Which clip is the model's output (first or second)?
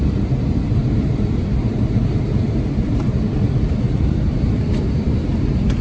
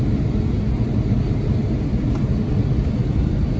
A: first